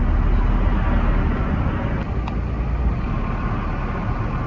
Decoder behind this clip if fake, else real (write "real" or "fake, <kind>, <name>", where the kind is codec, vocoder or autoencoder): real